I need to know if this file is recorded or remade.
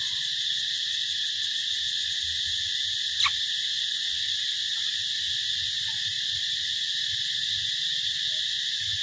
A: recorded